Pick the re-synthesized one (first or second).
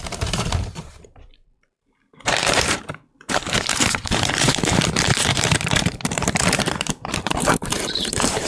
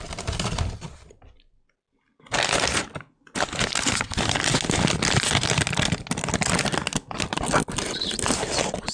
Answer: first